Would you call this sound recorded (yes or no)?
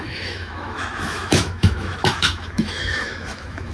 no